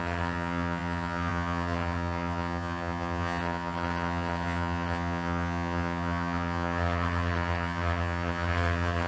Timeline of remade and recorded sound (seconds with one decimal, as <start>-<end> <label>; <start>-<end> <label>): 0.0-9.1 remade